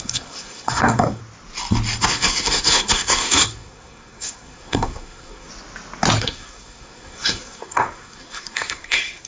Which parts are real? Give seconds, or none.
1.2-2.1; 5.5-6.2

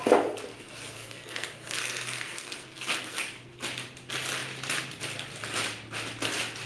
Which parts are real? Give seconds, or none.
0.0-0.5; 3.6-6.7

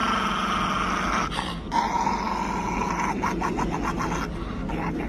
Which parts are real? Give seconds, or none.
0.0-5.1

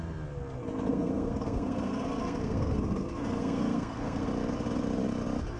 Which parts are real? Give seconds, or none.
0.0-0.9; 4.3-5.6

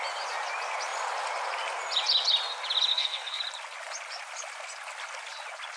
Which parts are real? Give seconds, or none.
0.0-2.9; 3.4-5.8

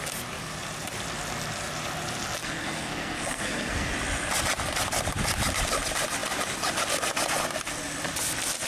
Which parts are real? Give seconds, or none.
0.0-2.4; 3.9-8.7